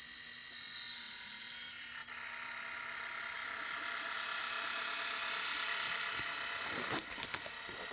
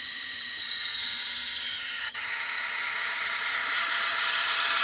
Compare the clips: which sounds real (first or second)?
first